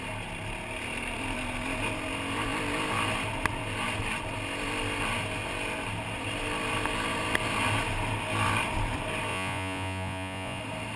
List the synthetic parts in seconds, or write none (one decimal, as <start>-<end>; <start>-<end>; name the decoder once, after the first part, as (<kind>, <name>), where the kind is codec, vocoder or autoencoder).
9.3-10.6 (vocoder, Vocos)